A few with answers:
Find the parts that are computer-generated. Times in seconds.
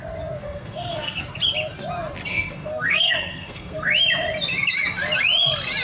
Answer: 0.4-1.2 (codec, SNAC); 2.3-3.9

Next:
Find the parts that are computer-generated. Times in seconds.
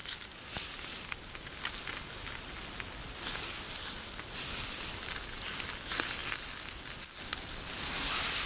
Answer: none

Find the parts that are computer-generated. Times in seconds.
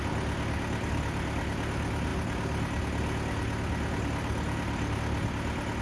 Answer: none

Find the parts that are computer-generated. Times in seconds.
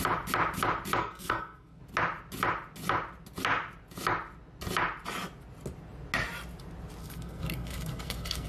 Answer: 1.0-1.8 (codec, SNAC); 7.0-8.5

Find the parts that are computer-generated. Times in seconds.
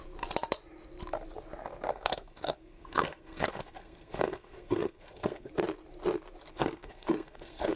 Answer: 1.9-5.5 (codec, SNAC); 6.5-7.8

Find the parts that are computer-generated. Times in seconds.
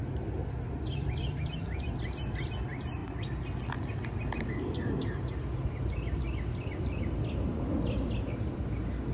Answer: none